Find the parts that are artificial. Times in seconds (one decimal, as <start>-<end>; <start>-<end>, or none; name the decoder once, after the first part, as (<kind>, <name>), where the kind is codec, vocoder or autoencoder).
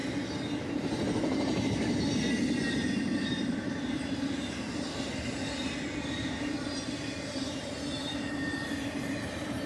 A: 2.7-9.7 (vocoder, BigVGAN v2)